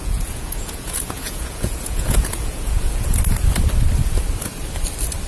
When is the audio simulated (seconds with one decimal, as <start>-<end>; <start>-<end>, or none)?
0.0-3.2